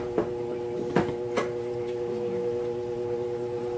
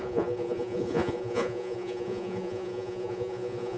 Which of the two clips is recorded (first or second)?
first